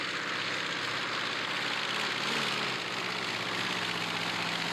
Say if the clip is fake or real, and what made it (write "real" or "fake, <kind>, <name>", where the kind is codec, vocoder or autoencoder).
real